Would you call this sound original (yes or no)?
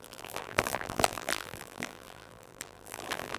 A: no